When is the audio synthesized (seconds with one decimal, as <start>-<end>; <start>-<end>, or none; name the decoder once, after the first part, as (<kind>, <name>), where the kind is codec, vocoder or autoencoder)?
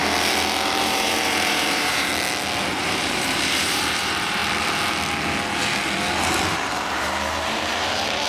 0.8-2.1 (vocoder, BigVGAN v2); 2.7-4.4; 6.5-8.3